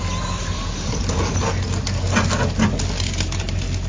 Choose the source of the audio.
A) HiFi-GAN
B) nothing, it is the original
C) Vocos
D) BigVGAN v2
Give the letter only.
B